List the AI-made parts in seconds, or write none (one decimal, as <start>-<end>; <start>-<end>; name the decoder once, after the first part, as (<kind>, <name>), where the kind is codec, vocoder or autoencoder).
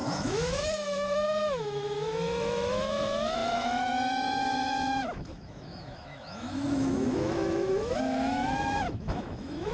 0.0-9.7 (autoencoder, DAC-VAE)